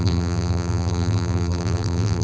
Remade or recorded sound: remade